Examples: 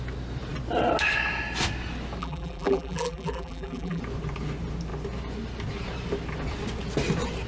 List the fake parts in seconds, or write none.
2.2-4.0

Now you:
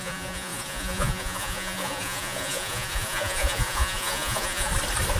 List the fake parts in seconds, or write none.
0.0-4.7

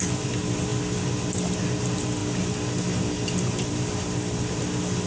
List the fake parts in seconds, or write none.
0.0-2.2; 3.7-5.1

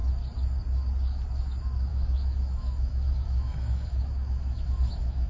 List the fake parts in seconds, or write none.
1.9-5.3

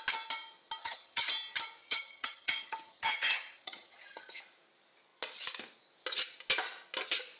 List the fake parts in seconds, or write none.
0.8-1.3; 1.8-4.4

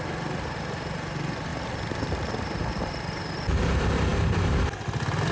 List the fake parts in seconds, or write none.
none